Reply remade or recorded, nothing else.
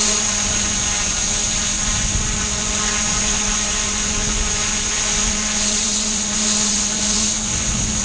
remade